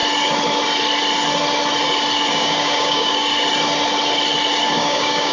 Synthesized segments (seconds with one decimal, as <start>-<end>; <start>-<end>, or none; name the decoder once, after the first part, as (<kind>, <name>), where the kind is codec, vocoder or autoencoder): 2.3-3.3 (codec, DAC); 4.7-5.3